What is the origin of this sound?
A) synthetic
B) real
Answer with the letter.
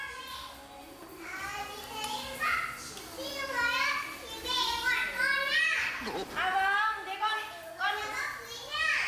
B